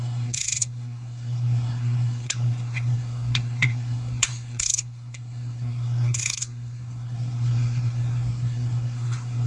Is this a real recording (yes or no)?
no